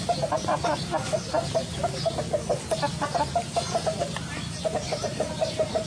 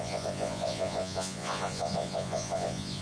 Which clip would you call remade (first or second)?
second